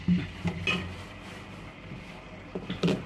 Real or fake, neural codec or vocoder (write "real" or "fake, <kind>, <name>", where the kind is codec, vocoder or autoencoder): real